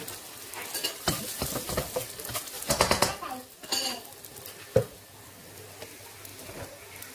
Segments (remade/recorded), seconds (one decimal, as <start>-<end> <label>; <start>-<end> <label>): 0.0-6.3 recorded; 6.3-7.1 remade